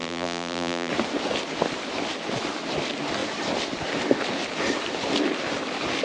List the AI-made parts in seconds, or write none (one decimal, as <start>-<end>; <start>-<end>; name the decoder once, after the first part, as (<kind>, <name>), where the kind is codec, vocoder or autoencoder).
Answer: 0.0-0.9 (vocoder, BigVGAN v2)